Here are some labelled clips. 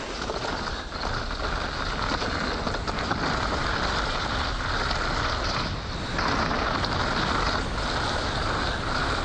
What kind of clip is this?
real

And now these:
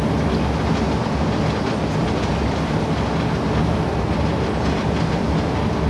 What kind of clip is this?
real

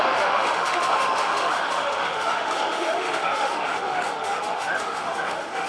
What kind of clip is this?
fake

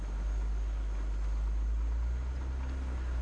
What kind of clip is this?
real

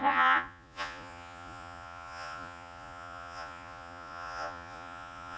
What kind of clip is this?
fake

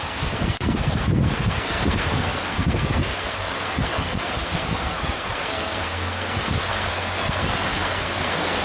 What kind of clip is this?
fake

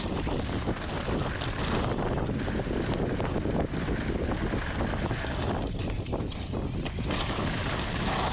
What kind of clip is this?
real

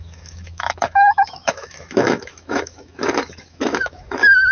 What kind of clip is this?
fake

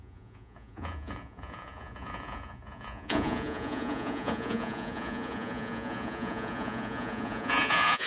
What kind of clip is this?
fake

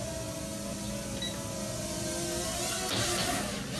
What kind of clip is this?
real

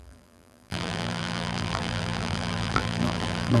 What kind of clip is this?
fake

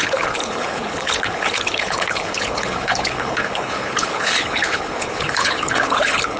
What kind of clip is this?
fake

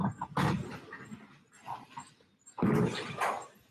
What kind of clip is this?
real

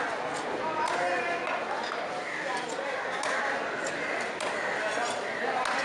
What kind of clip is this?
real